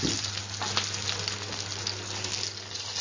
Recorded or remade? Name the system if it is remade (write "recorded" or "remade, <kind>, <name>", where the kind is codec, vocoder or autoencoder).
recorded